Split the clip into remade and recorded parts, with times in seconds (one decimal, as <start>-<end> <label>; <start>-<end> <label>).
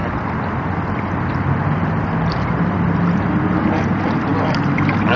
0.0-5.2 recorded